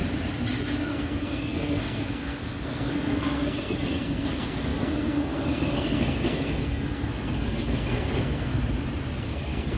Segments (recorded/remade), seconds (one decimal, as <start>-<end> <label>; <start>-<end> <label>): 0.0-0.8 recorded; 0.8-8.6 remade; 8.6-9.2 recorded; 9.2-9.8 remade